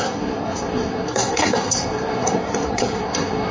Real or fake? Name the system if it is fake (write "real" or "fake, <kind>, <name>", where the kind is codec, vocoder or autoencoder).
fake, codec, SNAC